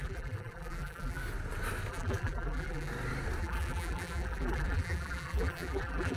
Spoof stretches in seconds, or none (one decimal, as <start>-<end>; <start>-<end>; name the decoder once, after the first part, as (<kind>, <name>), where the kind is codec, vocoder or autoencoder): 0.0-1.2 (vocoder, BigVGAN v2); 1.9-2.9; 3.4-6.2